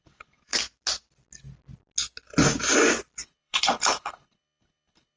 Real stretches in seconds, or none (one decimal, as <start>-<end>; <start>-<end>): 0.5-3.2